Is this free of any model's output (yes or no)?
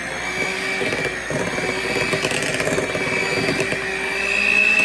yes